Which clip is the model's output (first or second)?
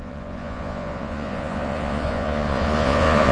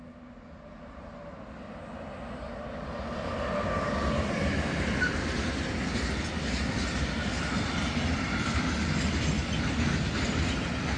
first